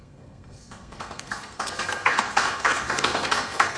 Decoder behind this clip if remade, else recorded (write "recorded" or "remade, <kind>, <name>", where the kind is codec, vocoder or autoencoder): remade, codec, SNAC